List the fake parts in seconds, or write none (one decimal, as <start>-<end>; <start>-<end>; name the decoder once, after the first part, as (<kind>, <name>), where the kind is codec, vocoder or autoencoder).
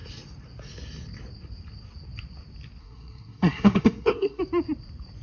2.8-4.4 (codec, SNAC)